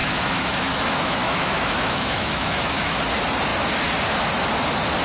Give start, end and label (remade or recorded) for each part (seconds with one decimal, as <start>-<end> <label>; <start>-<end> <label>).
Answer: 0.0-3.0 remade; 3.0-5.0 recorded